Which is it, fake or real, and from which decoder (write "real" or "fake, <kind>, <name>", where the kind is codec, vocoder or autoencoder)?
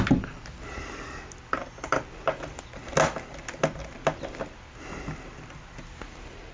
real